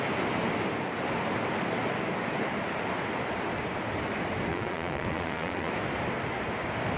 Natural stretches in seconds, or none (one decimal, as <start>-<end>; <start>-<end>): 0.0-4.5; 5.7-7.0